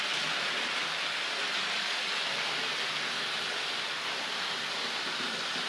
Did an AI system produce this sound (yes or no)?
no